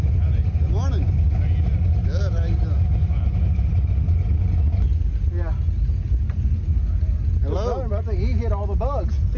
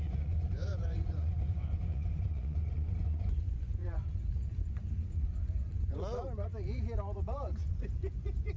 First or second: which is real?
first